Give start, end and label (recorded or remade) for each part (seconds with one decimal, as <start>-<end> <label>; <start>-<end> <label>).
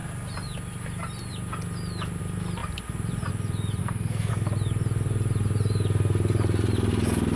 0.0-3.8 recorded; 3.8-4.3 remade; 4.3-7.4 recorded